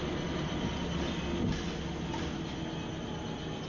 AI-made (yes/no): no